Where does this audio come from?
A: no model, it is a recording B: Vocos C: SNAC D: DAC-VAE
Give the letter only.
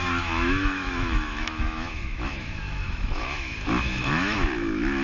D